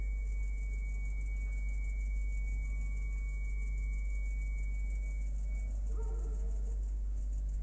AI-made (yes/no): no